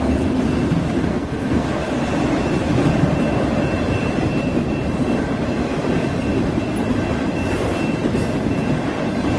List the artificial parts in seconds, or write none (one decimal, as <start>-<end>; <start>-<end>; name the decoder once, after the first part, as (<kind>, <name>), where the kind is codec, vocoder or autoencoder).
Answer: 1.1-1.8 (codec, SNAC)